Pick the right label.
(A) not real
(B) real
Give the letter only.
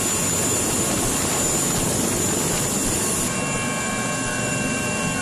B